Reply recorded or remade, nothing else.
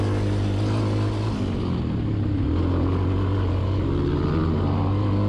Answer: recorded